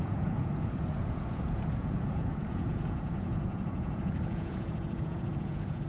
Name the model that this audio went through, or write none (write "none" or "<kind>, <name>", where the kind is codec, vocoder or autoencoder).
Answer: vocoder, Vocos